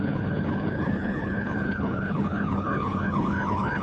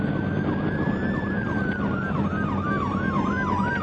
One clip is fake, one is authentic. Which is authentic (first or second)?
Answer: second